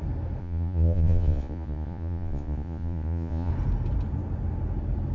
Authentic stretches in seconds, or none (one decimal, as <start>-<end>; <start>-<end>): 0.0-0.4; 3.5-5.1